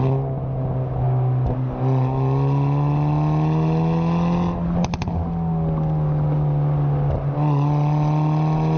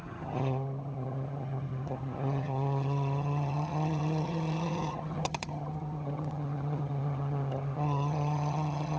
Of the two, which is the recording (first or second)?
first